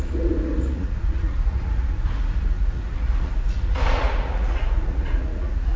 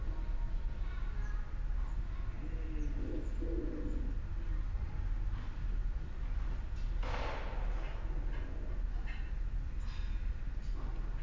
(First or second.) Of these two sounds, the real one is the second